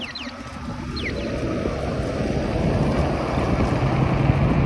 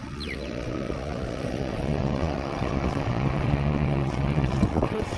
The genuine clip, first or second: first